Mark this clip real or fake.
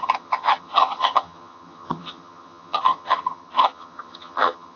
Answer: fake